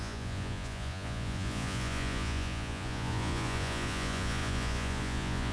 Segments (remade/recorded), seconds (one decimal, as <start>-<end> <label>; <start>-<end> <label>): 0.0-5.5 remade